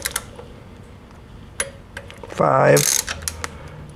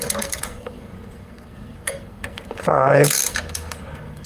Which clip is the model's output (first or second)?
second